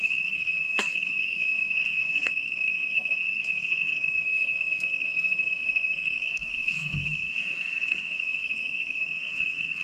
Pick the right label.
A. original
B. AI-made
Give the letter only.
B